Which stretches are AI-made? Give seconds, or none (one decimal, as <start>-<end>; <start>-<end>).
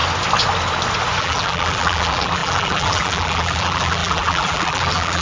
1.2-5.2